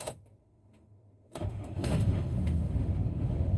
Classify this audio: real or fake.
fake